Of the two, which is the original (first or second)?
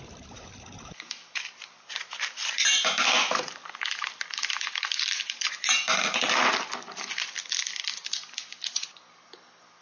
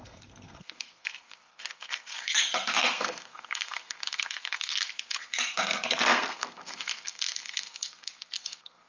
first